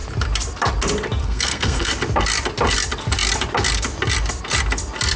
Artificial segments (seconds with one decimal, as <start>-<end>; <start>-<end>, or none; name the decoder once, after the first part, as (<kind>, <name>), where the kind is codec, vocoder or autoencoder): 1.2-1.9 (codec, SNAC)